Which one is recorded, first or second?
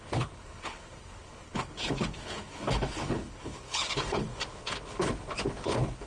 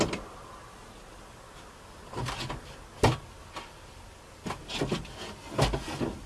second